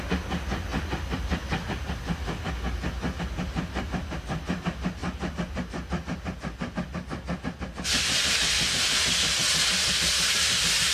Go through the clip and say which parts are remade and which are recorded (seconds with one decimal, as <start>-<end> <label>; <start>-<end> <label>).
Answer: 0.0-10.9 recorded